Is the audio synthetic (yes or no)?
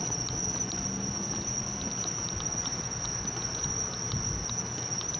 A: no